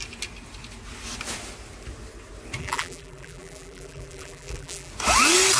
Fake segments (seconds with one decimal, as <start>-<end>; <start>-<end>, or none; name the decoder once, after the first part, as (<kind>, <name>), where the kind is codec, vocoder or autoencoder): 2.6-4.9 (vocoder, BigVGAN v2)